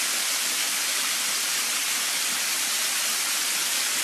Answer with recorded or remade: recorded